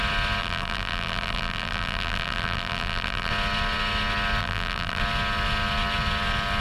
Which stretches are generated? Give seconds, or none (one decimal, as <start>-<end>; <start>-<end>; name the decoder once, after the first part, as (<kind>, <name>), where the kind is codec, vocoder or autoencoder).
0.4-3.3 (vocoder, BigVGAN v2); 4.4-5.0

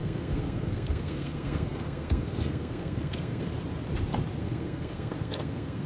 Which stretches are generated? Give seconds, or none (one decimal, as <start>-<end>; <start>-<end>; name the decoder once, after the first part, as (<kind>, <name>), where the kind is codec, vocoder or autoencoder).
0.0-3.5 (codec, SNAC); 4.4-5.9